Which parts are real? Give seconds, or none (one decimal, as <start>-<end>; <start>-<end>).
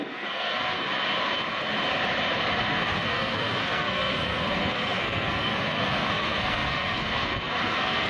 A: 0.9-2.7